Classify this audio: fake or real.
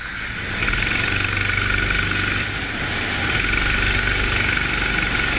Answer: real